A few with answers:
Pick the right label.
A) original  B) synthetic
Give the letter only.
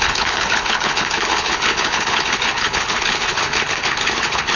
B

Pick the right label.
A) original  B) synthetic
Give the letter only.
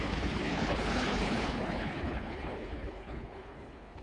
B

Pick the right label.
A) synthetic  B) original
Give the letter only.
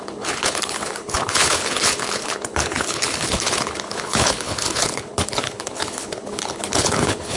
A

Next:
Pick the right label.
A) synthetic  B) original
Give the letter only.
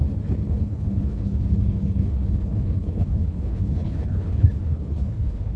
A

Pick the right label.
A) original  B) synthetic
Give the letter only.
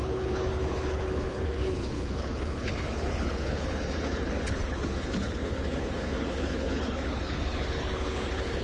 B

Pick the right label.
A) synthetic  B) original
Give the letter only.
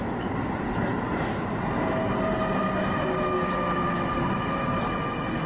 B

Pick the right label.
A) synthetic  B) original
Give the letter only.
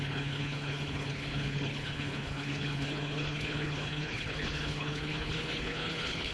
A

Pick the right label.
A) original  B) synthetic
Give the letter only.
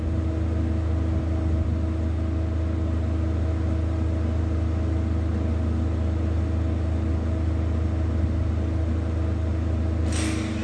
A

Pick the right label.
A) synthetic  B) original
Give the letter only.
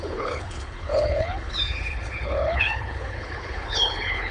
A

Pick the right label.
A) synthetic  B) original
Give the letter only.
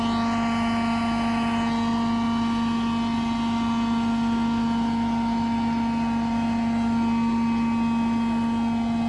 B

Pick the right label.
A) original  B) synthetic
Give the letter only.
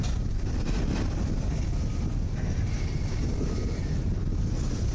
A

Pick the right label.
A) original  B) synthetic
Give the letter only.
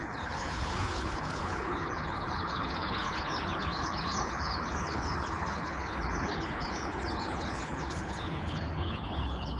B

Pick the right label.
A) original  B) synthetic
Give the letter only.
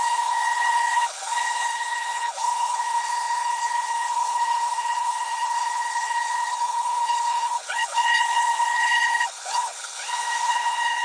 B